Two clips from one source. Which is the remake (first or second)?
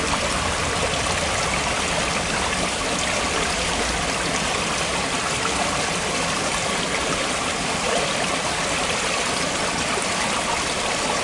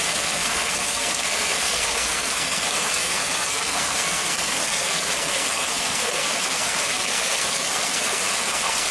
second